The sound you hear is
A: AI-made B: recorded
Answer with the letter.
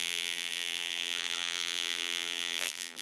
A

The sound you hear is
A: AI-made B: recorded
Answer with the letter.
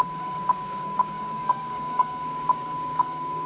A